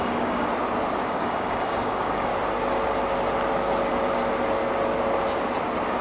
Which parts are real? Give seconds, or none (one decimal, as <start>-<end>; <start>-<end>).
0.5-1.1; 2.3-6.0